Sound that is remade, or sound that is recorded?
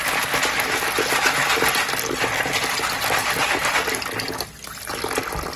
recorded